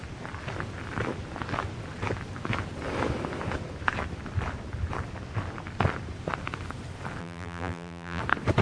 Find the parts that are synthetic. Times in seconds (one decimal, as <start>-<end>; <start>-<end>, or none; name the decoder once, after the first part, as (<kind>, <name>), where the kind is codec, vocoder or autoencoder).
7.2-8.2 (vocoder, BigVGAN v2)

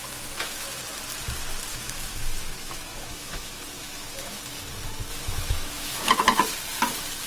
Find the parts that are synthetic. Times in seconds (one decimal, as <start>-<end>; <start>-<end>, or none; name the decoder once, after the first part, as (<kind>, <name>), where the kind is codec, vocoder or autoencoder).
0.0-0.8 (autoencoder, DAC-VAE); 1.7-4.4; 5.1-6.1

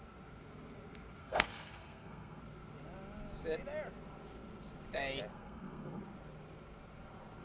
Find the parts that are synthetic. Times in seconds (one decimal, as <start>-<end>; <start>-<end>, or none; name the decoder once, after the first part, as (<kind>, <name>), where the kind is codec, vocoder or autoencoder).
1.2-2.4 (codec, SNAC); 5.3-6.0

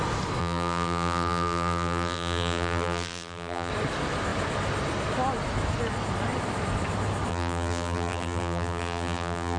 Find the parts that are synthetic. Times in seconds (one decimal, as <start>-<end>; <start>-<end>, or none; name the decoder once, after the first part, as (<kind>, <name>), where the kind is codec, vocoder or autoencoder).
0.4-3.7 (vocoder, BigVGAN v2); 7.3-9.6

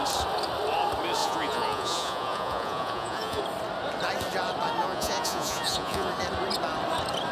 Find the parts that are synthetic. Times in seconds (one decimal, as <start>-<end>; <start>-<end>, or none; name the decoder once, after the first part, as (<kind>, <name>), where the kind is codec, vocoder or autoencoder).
1.2-3.4 (vocoder, Vocos); 4.8-6.1